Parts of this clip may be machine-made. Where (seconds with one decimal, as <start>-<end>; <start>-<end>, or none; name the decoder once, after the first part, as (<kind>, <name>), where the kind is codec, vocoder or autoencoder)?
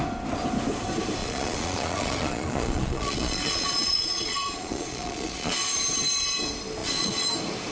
1.2-5.7 (vocoder, Vocos); 6.8-7.3